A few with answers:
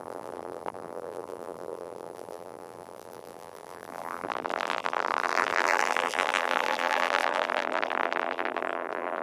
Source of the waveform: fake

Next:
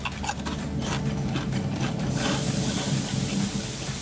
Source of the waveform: real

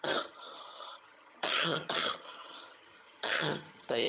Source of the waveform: fake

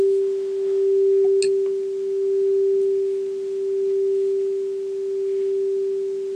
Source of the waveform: real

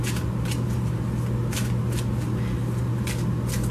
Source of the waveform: real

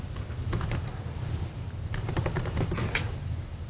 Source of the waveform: real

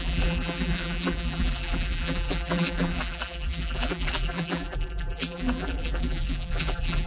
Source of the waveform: fake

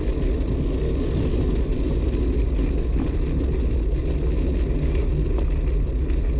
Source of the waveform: real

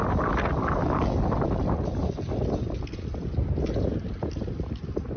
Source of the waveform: real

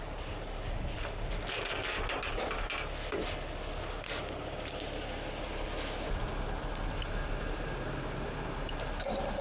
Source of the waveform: real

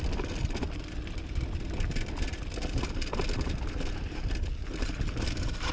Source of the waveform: real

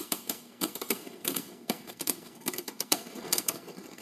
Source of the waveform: fake